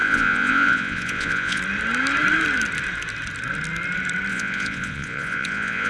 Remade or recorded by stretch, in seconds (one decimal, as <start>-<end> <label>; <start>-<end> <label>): 0.0-1.6 remade; 1.6-4.3 recorded; 4.3-5.9 remade